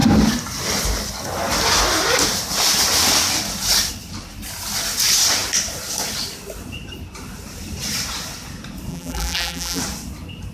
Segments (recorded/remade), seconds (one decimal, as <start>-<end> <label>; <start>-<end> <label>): 0.0-8.9 recorded; 8.9-9.8 remade; 9.8-10.5 recorded